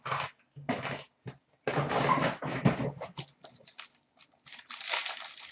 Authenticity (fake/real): real